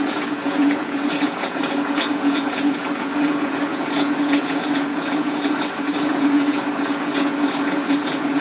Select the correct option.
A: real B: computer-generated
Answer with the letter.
B